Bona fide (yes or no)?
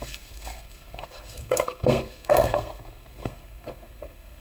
no